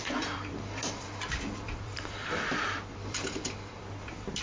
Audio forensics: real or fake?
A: fake